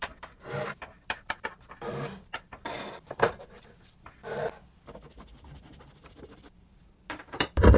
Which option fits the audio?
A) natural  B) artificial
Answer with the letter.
B